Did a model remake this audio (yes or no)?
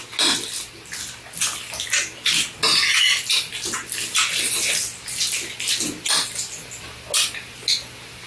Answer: no